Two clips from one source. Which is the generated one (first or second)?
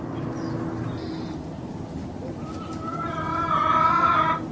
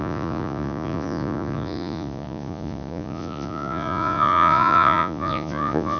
second